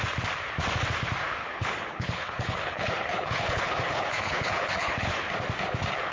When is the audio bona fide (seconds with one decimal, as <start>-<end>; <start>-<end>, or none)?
0.0-1.4; 5.1-6.1